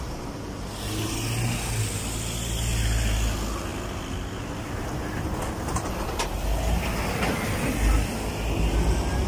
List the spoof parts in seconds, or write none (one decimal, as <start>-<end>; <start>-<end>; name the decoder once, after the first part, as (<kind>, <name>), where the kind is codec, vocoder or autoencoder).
none